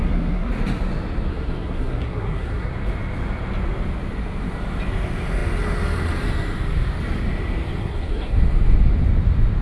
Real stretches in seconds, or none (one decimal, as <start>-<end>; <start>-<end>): 0.5-1.3; 2.7-7.8; 8.4-9.6